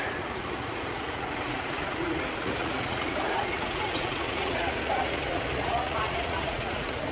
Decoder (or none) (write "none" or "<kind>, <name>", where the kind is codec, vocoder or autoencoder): vocoder, Vocos